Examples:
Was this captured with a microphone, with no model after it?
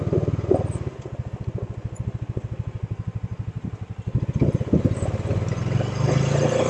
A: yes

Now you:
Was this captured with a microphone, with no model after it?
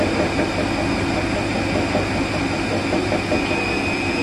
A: yes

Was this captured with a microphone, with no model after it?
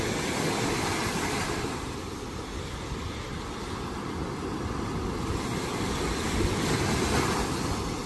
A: yes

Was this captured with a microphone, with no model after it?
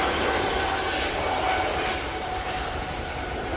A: yes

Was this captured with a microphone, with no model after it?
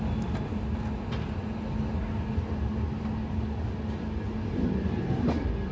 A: yes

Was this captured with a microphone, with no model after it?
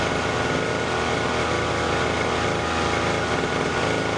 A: yes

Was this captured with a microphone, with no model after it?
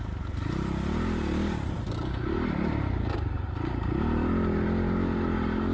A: yes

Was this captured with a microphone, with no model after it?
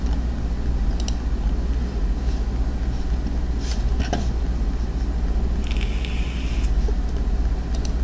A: yes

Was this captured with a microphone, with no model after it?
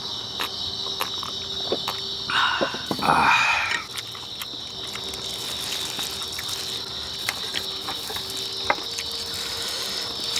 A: yes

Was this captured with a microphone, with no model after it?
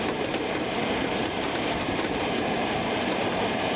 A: no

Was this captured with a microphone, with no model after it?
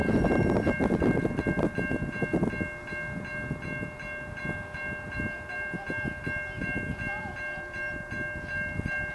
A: yes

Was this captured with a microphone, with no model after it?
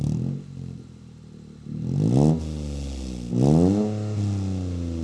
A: yes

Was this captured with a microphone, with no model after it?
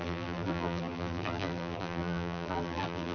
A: no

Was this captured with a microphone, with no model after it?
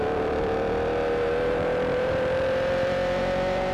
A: no